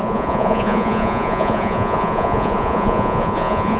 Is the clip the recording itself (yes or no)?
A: no